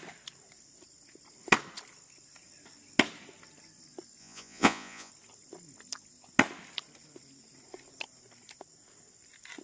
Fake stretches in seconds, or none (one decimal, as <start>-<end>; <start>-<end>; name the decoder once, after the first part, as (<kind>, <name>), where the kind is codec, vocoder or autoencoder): 4.2-5.1 (vocoder, Vocos)